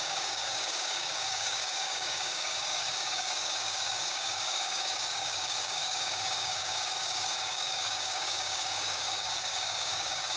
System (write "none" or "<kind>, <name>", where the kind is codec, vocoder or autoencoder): codec, DAC